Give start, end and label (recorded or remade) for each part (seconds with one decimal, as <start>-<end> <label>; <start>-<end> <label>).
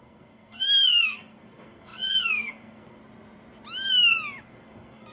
0.0-3.0 remade; 3.0-4.4 recorded; 4.4-5.1 remade